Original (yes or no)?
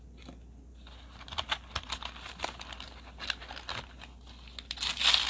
yes